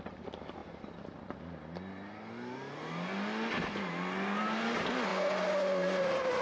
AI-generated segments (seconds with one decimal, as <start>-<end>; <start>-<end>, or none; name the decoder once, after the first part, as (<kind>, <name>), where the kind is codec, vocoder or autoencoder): none